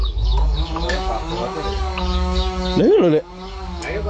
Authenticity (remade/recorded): remade